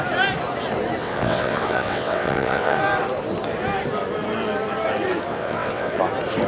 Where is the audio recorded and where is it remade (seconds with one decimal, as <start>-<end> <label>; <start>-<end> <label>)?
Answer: 0.0-1.0 recorded; 1.0-2.8 remade; 2.8-5.3 recorded; 5.3-6.0 remade; 6.0-6.5 recorded